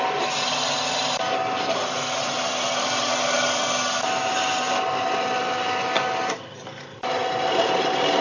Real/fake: real